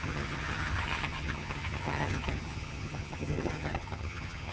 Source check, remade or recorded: remade